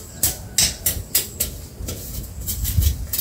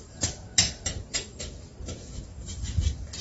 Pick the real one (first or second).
first